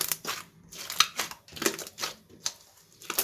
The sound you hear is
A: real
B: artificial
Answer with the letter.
A